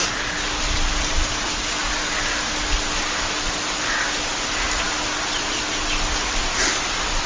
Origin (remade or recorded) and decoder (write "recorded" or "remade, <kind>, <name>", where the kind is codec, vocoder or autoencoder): recorded